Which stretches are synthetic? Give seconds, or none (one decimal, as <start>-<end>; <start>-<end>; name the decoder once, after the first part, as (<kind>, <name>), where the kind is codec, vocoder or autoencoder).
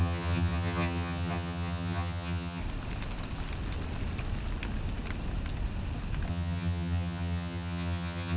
0.0-2.6 (vocoder, HiFi-GAN); 6.3-8.4